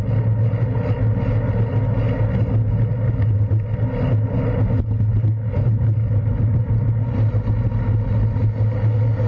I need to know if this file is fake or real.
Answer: real